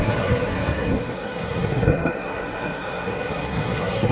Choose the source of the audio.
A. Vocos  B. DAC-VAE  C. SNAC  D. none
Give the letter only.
C